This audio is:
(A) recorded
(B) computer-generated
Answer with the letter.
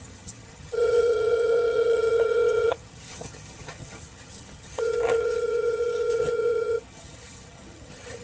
B